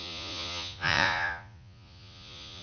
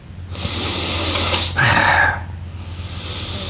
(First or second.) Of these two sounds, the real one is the second